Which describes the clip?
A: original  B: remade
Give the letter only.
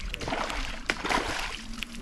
A